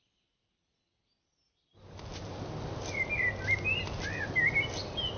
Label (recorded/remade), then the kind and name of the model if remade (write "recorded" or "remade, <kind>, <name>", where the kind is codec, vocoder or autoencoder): recorded